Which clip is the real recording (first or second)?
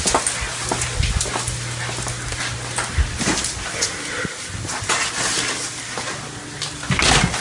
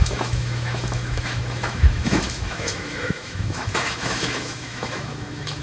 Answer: first